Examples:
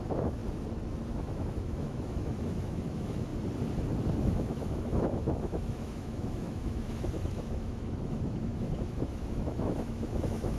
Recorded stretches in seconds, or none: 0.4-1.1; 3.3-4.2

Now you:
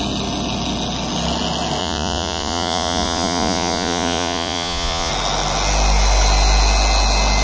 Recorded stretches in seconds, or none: 0.0-1.8; 5.1-7.4

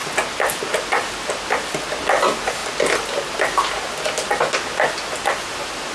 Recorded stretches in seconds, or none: 0.0-5.9

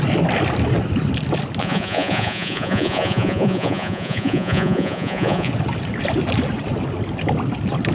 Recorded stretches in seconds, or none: 0.0-1.6; 5.5-7.9

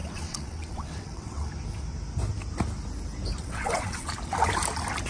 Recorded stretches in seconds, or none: 1.5-3.4; 4.1-5.1

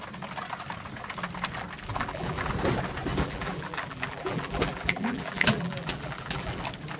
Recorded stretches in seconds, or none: 0.0-1.9; 2.5-3.1; 6.6-7.0